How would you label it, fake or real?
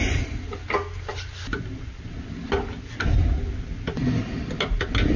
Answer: real